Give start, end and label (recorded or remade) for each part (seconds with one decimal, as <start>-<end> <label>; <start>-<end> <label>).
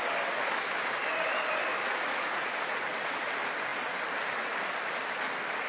0.0-1.7 recorded; 1.7-2.9 remade; 2.9-5.7 recorded